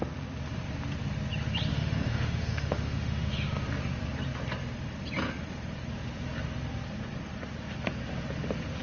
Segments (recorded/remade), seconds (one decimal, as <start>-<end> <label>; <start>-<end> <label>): 0.0-1.7 recorded; 1.7-3.5 remade; 3.5-8.8 recorded